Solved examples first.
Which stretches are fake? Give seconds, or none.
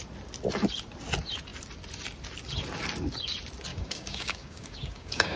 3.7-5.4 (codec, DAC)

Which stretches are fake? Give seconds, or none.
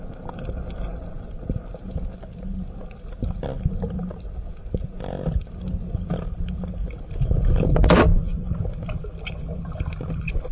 none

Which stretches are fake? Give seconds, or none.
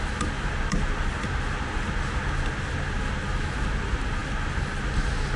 none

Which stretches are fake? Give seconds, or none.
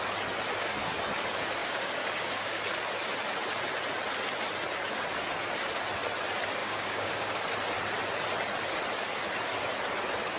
1.6-2.6 (codec, DAC); 6.6-7.4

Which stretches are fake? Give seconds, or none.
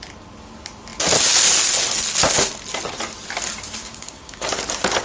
3.8-4.4 (codec, DAC)